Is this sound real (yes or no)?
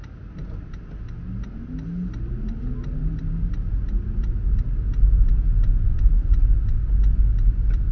yes